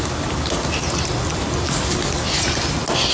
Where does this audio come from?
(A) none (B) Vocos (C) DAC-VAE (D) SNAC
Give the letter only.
A